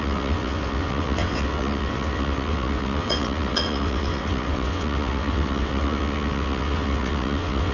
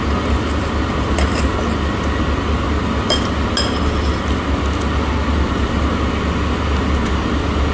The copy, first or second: first